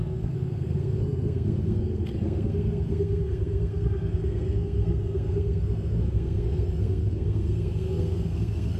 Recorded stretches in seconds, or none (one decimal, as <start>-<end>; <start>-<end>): none